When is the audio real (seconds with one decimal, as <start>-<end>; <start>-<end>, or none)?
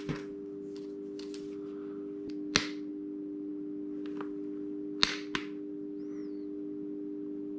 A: 0.0-7.6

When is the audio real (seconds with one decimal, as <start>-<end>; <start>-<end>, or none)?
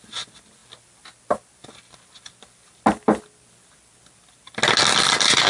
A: 0.0-5.5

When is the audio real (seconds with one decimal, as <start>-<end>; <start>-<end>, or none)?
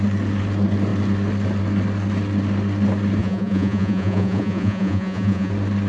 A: 0.0-3.2; 5.5-5.9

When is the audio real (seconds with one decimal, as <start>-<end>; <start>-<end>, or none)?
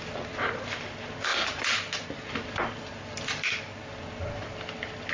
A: 0.0-5.1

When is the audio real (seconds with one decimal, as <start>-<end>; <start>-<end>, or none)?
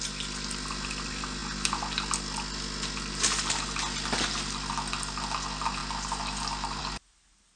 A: 0.0-7.6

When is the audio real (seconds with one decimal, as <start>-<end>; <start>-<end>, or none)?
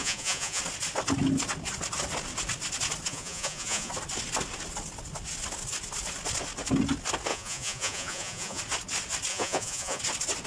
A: 0.6-3.1; 3.9-7.3; 8.6-9.3; 10.0-10.5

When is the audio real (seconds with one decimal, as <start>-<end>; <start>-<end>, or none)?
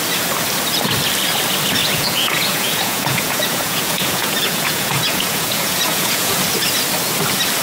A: 0.0-1.8; 6.4-7.6